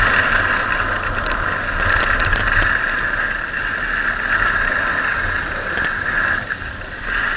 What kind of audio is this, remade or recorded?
recorded